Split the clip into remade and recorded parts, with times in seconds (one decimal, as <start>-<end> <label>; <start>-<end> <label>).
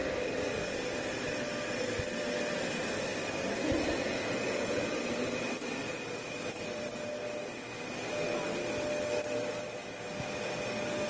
0.0-4.0 recorded; 4.0-4.8 remade; 4.8-11.1 recorded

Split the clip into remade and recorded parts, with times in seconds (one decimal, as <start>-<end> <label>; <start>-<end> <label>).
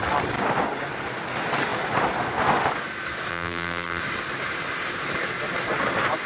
0.0-3.3 recorded; 3.3-4.0 remade; 4.0-6.3 recorded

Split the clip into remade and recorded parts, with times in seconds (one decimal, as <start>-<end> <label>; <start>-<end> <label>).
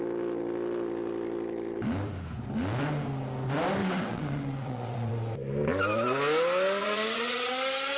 0.0-3.8 recorded; 3.8-5.1 remade; 5.1-6.8 recorded; 6.8-7.5 remade; 7.5-8.0 recorded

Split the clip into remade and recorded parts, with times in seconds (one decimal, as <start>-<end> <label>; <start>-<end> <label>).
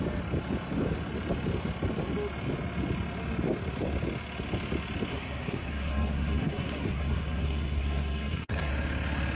0.0-5.1 recorded; 5.1-8.7 remade; 8.7-9.3 recorded